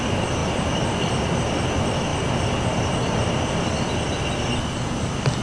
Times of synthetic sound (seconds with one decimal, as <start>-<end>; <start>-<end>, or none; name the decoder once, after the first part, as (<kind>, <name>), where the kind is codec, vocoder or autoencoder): none